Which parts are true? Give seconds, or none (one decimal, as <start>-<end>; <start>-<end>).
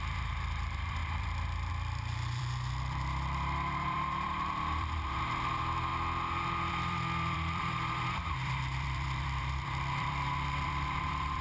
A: 5.9-6.7